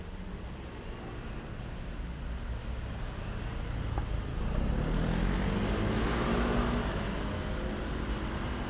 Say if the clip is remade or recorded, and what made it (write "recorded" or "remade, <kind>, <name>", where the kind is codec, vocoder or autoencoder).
recorded